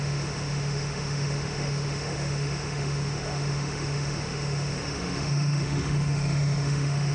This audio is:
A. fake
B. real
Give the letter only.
A